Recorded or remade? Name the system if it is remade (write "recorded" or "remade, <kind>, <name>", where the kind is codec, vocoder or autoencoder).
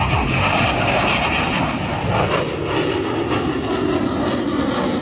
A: recorded